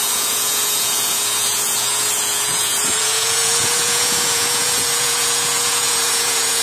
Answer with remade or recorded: remade